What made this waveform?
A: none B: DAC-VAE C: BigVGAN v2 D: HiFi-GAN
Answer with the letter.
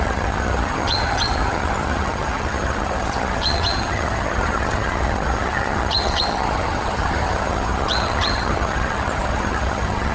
D